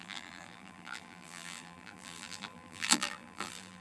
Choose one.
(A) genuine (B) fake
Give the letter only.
B